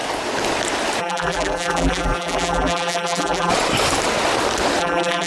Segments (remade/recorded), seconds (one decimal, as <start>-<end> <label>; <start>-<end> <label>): 0.0-1.0 recorded; 1.0-3.5 remade; 3.5-4.8 recorded; 4.8-5.3 remade